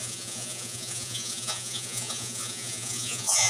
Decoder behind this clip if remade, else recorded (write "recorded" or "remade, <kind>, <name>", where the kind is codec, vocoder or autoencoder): remade, vocoder, Vocos